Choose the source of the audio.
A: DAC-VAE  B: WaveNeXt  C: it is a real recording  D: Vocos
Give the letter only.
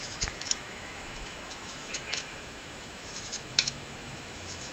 A